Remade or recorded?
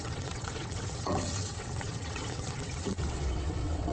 remade